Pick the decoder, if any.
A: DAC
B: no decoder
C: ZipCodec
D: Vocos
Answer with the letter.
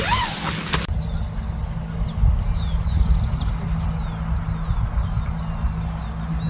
B